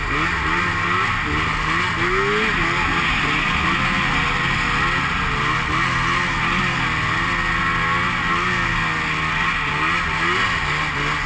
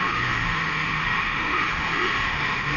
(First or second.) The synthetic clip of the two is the second